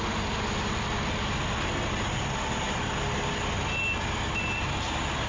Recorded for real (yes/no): yes